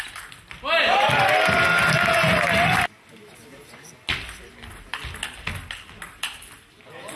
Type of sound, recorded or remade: recorded